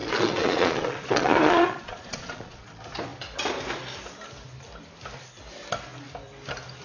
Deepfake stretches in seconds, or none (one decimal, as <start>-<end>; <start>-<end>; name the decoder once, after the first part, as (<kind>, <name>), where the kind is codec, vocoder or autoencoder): 0.0-2.6 (vocoder, Vocos)